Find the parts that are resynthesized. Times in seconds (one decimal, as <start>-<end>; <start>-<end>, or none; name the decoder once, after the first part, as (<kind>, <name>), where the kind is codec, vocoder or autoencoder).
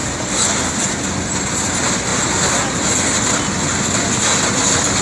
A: none